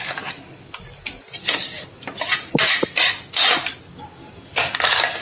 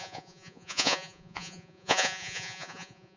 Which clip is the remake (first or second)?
second